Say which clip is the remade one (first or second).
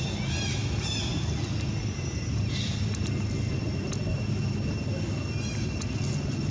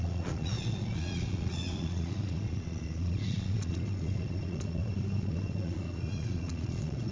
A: second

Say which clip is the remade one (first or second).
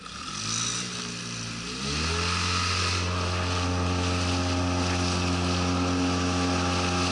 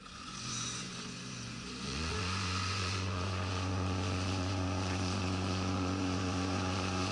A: second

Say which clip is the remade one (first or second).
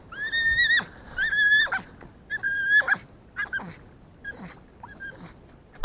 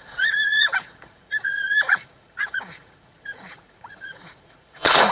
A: second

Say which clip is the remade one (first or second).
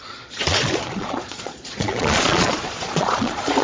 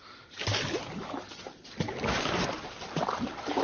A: first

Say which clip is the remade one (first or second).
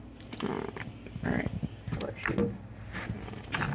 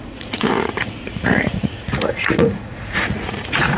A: second